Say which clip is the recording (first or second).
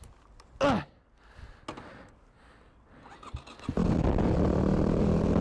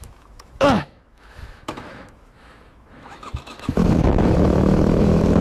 first